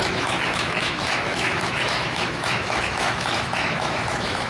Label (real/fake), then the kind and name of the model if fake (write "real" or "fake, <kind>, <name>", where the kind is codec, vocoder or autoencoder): fake, autoencoder, DAC-VAE